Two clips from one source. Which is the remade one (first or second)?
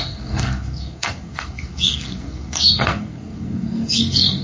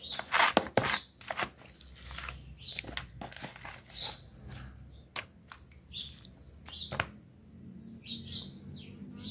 first